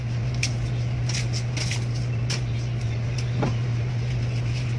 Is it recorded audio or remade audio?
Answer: recorded